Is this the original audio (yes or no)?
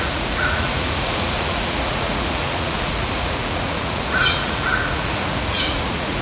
no